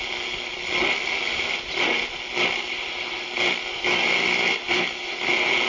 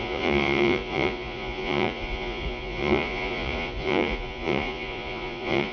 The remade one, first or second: second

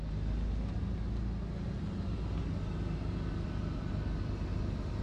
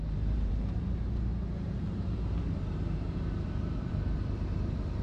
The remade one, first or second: second